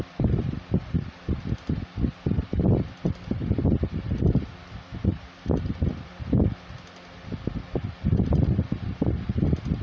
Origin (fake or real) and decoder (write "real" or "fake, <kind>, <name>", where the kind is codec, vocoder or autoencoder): real